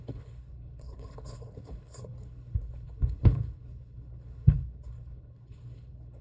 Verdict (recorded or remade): remade